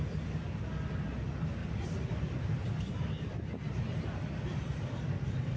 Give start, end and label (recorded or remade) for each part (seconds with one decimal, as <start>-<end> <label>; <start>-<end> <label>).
0.0-1.6 recorded; 1.6-5.0 remade; 5.0-5.6 recorded